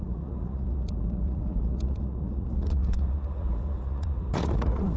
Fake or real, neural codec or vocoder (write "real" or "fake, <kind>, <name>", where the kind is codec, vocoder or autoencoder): fake, vocoder, Vocos